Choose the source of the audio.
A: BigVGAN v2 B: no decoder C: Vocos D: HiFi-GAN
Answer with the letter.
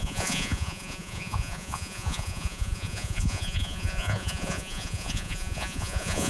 C